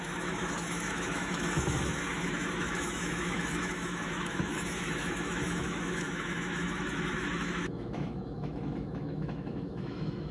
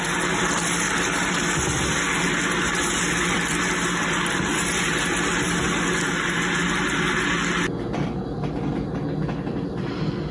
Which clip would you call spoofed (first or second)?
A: first